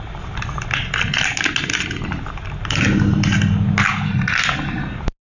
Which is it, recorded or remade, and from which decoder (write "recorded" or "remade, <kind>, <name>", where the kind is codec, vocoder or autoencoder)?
recorded